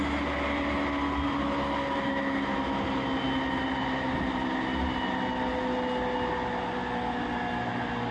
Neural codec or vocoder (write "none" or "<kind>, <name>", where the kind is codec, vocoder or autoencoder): none